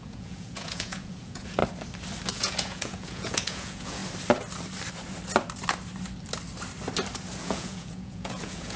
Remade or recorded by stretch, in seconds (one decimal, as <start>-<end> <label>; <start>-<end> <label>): 0.0-1.6 remade; 1.6-2.3 recorded; 2.3-4.0 remade; 4.0-7.4 recorded; 7.4-8.8 remade